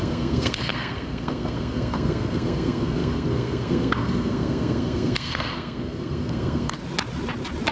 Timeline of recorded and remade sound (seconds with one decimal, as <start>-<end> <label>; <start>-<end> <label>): 0.0-6.8 remade; 6.8-7.7 recorded